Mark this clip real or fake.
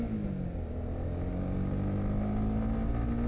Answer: real